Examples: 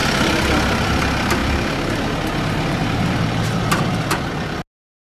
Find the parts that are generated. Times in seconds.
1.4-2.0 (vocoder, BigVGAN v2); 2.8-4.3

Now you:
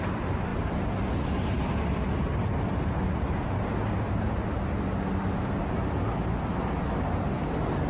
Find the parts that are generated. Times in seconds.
none

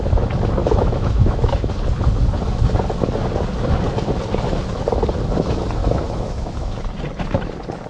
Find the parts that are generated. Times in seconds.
0.6-1.7 (autoencoder, DAC-VAE); 5.8-6.9

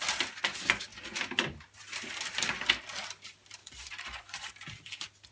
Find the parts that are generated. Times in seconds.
3.6-4.5 (vocoder, Vocos)